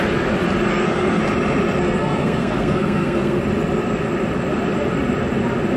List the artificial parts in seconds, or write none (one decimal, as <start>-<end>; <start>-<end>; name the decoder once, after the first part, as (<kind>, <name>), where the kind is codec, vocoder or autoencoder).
0.7-1.2 (codec, SNAC); 1.8-3.4